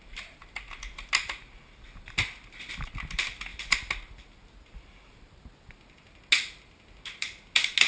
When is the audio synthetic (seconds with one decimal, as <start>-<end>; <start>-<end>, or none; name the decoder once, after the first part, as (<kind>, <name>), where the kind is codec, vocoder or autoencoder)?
none

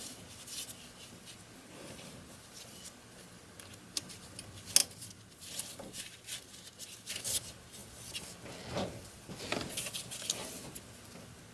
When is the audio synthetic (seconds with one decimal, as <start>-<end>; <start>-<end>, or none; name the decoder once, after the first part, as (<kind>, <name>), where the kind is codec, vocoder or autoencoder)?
none

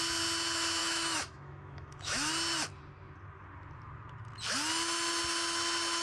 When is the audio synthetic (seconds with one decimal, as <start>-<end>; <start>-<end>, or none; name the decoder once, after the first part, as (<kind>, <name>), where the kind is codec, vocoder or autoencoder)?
0.8-2.3 (autoencoder, DAC-VAE)

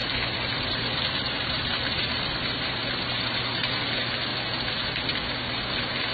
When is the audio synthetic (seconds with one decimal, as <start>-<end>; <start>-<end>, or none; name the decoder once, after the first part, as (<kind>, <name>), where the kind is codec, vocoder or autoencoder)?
0.0-3.7 (vocoder, BigVGAN v2)

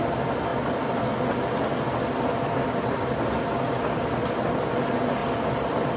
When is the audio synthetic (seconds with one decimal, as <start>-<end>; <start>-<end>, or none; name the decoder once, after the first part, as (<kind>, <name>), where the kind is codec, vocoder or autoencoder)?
5.2-6.0 (vocoder, BigVGAN v2)